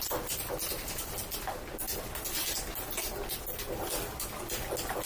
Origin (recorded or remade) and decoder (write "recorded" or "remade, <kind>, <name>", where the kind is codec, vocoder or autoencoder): recorded